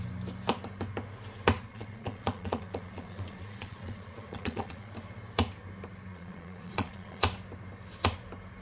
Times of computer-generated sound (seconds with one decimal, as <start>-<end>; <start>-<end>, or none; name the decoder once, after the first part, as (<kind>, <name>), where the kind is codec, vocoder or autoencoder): 1.7-4.9 (vocoder, Vocos); 6.1-7.2